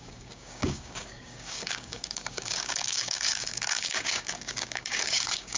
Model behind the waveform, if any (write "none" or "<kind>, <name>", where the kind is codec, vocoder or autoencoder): codec, DAC